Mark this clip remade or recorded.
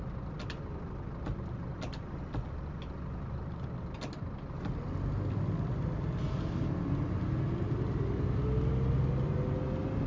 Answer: recorded